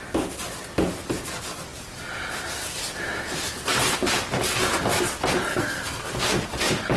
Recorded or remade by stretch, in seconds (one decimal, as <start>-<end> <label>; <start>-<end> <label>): 0.0-5.5 recorded; 5.5-6.0 remade; 6.0-7.0 recorded